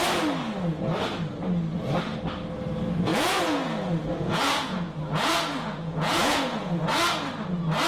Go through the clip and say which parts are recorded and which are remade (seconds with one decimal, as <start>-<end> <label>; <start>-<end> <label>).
0.0-3.1 recorded; 3.1-6.8 remade; 6.8-7.9 recorded